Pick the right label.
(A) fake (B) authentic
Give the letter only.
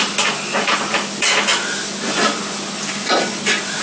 B